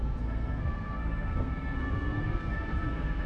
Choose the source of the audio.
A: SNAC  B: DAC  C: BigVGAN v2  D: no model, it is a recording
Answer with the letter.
A